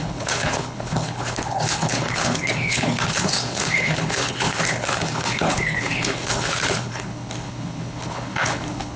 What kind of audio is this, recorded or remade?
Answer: remade